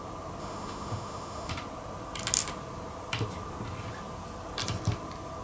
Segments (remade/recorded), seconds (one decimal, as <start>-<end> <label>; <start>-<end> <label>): 0.0-0.4 recorded; 0.4-1.5 remade; 1.5-5.4 recorded